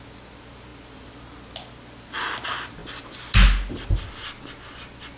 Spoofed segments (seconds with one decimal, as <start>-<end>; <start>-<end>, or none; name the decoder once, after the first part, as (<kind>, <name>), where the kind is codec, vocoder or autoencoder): none